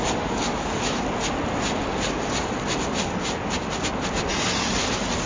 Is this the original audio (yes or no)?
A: yes